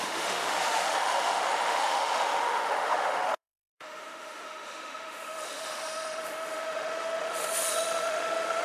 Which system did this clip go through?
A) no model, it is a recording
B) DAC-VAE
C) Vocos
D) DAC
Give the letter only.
B